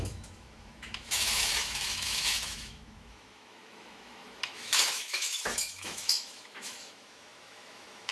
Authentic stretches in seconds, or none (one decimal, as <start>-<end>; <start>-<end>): none